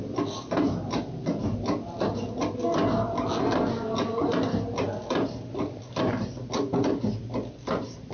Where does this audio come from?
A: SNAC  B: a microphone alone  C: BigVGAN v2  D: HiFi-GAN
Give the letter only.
B